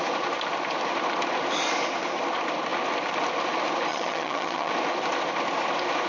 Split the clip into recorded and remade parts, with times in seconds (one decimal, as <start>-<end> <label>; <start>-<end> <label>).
0.0-3.9 recorded; 3.9-4.7 remade; 4.7-6.1 recorded